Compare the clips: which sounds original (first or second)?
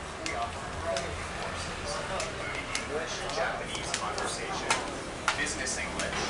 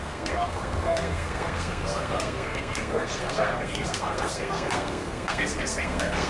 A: first